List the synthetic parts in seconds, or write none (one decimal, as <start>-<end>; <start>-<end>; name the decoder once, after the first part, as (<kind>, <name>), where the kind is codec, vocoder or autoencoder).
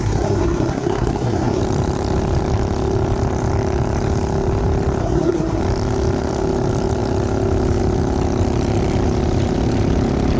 0.0-1.6 (codec, SNAC); 5.0-5.6